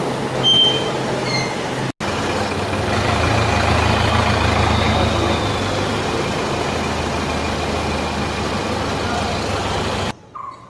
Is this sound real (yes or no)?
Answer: yes